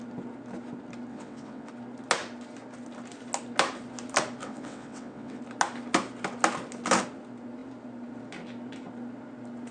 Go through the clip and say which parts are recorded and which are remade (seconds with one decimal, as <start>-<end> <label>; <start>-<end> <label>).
0.0-1.1 recorded; 1.1-1.7 remade; 1.7-4.4 recorded; 4.4-5.4 remade; 5.4-9.7 recorded